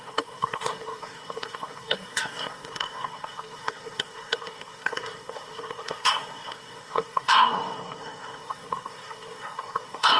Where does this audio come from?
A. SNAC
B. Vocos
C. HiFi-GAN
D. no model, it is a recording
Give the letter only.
A